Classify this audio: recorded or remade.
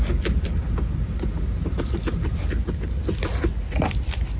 recorded